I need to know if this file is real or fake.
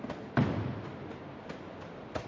real